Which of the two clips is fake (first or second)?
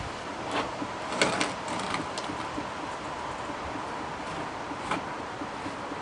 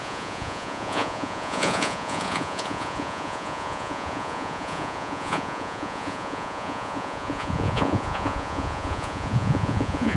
second